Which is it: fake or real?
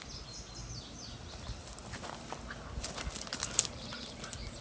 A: real